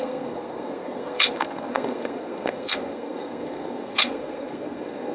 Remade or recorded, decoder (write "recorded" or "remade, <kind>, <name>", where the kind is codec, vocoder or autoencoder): remade, codec, SNAC